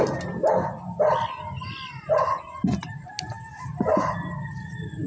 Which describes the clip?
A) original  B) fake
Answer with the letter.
A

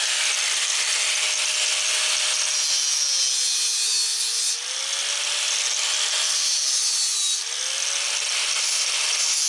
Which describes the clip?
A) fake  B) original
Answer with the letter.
B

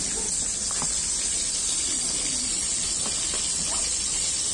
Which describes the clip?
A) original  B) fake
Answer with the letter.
A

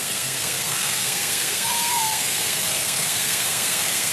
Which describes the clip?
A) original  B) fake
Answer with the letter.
B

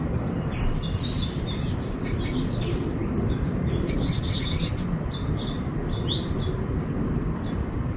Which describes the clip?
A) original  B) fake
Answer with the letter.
A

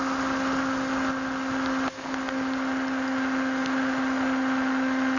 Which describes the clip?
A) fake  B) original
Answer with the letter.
B